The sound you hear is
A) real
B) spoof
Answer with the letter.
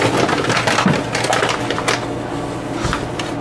A